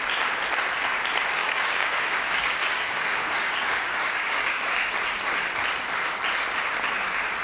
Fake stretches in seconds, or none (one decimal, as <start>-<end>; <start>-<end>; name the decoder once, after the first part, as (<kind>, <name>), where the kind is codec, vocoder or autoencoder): 1.4-4.9 (codec, DAC)